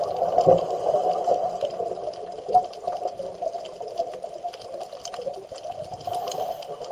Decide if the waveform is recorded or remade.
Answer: recorded